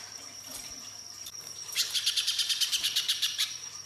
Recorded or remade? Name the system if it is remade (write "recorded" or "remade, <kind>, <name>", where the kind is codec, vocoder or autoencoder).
remade, vocoder, BigVGAN v2